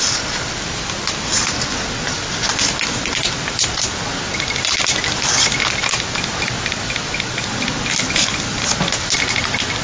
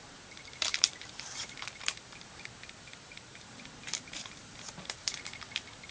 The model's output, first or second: second